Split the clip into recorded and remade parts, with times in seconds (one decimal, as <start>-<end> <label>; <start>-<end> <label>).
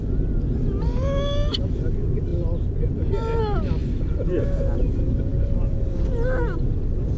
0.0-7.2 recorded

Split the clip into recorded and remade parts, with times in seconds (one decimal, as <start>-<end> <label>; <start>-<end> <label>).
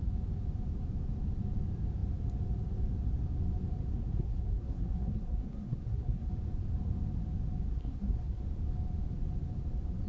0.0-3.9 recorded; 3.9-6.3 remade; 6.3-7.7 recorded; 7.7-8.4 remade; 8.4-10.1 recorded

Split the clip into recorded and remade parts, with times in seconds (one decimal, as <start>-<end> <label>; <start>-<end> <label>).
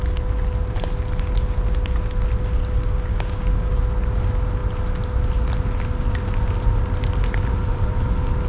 0.0-3.1 recorded; 3.1-3.8 remade; 3.8-8.5 recorded